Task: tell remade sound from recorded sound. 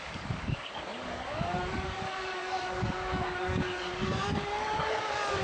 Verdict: remade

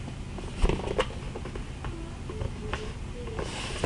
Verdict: recorded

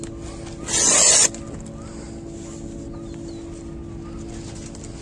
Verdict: recorded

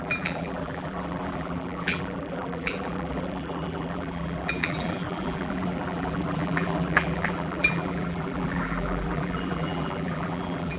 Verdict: remade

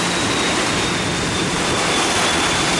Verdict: recorded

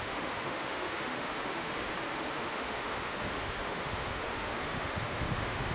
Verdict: remade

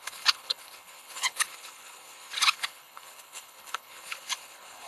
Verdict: remade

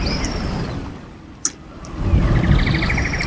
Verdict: recorded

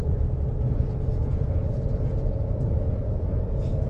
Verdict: remade